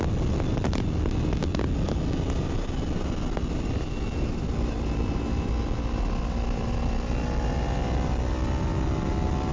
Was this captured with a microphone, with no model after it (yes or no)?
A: yes